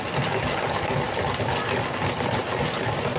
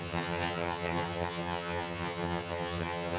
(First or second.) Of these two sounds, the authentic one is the first